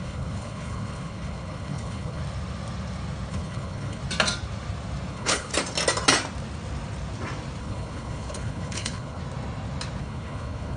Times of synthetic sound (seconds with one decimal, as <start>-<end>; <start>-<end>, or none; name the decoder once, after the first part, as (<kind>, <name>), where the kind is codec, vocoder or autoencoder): 0.0-2.2 (codec, HILCodec); 3.3-4.0; 5.1-5.5; 7.6-9.2; 10.0-10.8